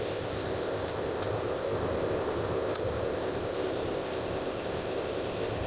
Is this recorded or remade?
remade